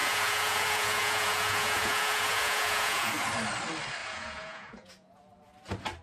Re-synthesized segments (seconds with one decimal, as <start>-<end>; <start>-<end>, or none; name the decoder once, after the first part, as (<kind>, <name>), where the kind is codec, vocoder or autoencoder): 0.0-3.1 (vocoder, Vocos); 4.0-5.2